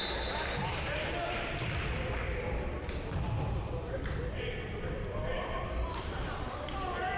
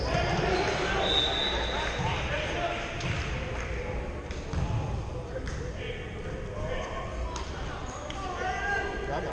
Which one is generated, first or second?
first